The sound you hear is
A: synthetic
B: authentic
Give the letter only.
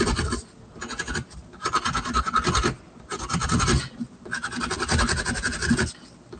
B